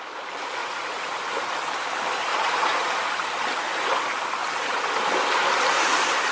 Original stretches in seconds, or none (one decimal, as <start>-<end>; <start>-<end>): 0.0-0.6; 1.2-2.3; 3.0-6.3